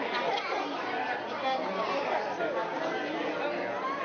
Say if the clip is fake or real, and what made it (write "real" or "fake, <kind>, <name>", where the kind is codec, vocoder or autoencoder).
real